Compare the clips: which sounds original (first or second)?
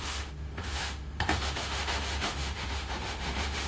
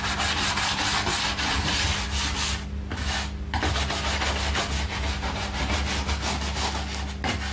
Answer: second